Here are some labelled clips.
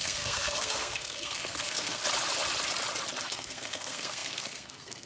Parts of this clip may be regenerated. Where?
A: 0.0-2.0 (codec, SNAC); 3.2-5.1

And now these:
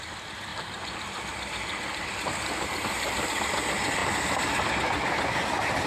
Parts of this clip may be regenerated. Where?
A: none

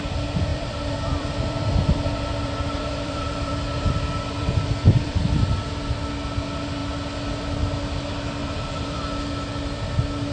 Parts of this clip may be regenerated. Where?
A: 0.5-5.7 (vocoder, BigVGAN v2); 8.4-9.0

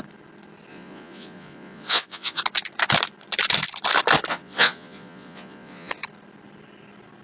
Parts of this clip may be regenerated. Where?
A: 0.7-2.4 (vocoder, Vocos); 4.3-5.9

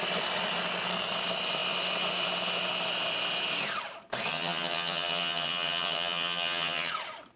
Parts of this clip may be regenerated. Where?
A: 4.3-6.9 (vocoder, HiFi-GAN)

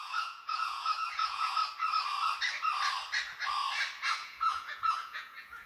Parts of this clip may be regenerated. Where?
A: 0.0-1.5 (vocoder, Vocos); 4.1-5.7

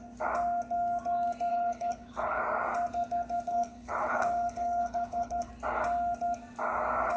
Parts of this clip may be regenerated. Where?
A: 1.5-2.4 (codec, HILCodec); 3.5-5.5